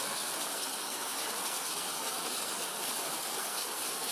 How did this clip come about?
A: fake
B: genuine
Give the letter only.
A